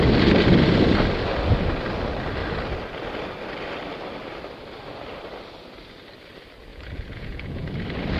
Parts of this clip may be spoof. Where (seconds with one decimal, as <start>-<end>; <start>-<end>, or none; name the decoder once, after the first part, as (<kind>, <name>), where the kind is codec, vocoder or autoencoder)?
6.7-7.7 (vocoder, Vocos)